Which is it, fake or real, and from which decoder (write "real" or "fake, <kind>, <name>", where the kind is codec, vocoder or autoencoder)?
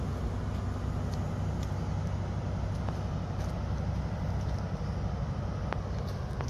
real